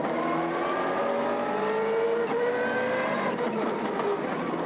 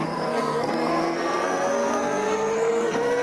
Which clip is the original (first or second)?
first